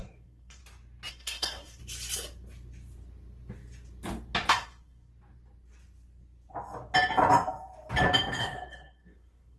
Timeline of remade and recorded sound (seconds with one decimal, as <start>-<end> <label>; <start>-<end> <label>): 0.0-0.6 remade; 0.6-1.1 recorded; 1.1-1.8 remade; 1.8-4.5 recorded; 4.5-5.1 remade; 5.1-8.4 recorded; 8.4-9.6 remade